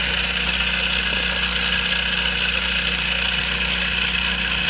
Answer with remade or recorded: recorded